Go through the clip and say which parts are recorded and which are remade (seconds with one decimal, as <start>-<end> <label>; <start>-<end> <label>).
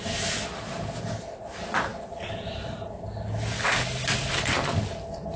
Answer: 0.0-5.4 recorded